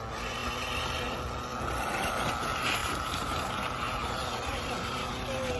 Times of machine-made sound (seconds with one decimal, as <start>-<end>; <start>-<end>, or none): 2.8-4.1; 4.5-5.1